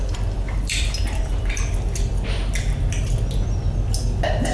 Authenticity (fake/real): real